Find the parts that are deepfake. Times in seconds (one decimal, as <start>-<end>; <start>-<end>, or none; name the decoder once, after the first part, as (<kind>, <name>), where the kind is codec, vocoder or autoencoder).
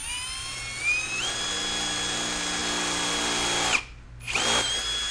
0.0-0.6 (vocoder, BigVGAN v2)